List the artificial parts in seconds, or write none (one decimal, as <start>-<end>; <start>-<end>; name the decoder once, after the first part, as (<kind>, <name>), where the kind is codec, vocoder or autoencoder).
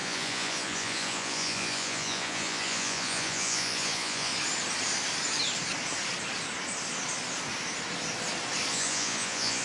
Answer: 0.0-4.3 (vocoder, Vocos); 8.7-9.6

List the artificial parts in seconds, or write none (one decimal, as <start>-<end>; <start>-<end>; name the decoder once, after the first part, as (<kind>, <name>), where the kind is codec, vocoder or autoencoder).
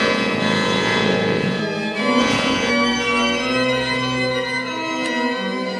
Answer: 0.0-1.6 (vocoder, Vocos); 2.2-2.7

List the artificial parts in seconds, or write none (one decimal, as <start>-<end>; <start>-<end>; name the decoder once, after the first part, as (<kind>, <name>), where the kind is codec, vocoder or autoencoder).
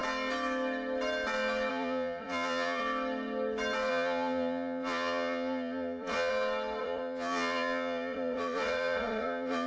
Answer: 1.7-2.8 (vocoder, Vocos); 3.9-6.3; 6.8-9.7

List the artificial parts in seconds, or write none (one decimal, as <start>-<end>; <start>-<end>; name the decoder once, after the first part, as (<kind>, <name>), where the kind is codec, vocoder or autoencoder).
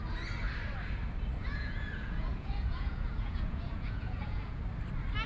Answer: 1.4-4.6 (vocoder, Vocos)